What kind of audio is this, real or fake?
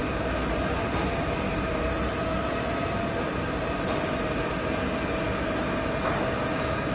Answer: real